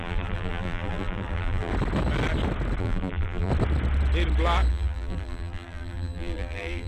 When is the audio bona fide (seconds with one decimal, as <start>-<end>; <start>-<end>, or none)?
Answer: 1.7-2.8; 3.5-4.7